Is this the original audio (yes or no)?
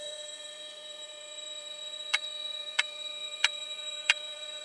no